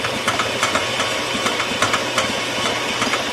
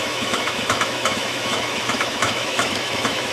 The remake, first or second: second